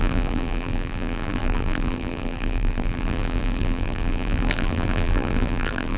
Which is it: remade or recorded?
remade